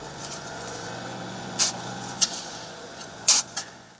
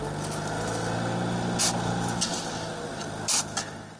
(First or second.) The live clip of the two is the second